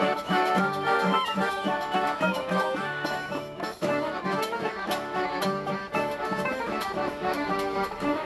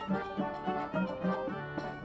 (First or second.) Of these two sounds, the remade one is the first